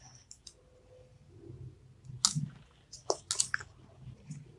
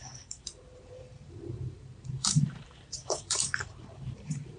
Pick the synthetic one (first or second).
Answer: second